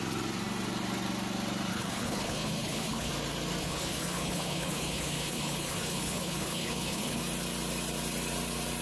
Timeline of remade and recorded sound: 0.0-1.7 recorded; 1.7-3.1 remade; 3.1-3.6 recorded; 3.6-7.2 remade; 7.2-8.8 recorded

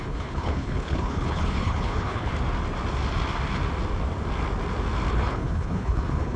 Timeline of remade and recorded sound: 0.0-2.3 remade; 2.3-5.1 recorded; 5.1-6.4 remade

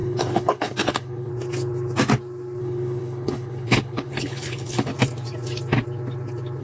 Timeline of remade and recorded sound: 0.0-1.3 remade; 1.3-2.6 recorded; 2.6-4.9 remade; 4.9-6.6 recorded

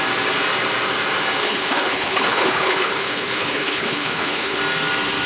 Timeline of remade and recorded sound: 0.0-1.4 recorded; 1.4-4.6 remade; 4.6-5.3 recorded

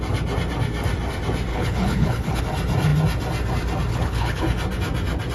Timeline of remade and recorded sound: 0.0-1.5 recorded; 1.5-2.4 remade; 2.4-3.9 recorded; 3.9-4.4 remade; 4.4-5.3 recorded

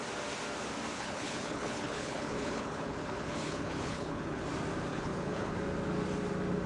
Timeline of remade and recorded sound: 0.0-0.9 recorded; 0.9-4.4 remade; 4.4-4.9 recorded; 4.9-5.6 remade; 5.6-6.7 recorded